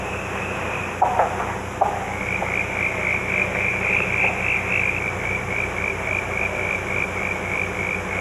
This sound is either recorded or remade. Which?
recorded